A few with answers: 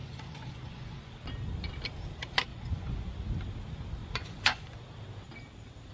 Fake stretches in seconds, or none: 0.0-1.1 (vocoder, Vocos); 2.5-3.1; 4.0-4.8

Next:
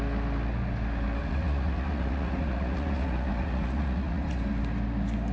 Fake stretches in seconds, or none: 1.2-4.4 (vocoder, Vocos)

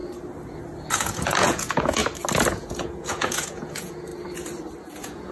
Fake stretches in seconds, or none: 0.9-2.0 (vocoder, Vocos); 2.5-4.1; 4.8-5.3